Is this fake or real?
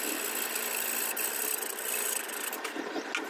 real